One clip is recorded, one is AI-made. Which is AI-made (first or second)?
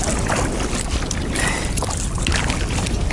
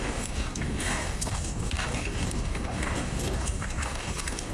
second